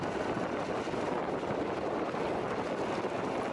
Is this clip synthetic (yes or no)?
no